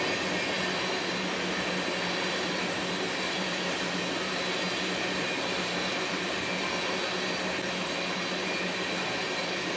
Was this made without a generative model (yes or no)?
yes